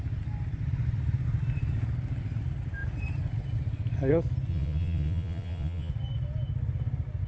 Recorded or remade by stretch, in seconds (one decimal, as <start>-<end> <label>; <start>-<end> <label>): 0.0-4.5 recorded; 4.5-5.9 remade; 5.9-7.3 recorded